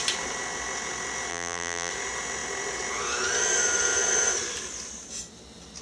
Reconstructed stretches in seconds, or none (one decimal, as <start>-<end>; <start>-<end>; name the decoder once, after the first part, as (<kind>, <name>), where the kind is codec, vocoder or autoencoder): 1.3-1.9 (vocoder, BigVGAN v2)